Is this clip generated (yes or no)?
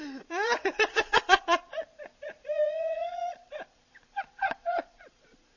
yes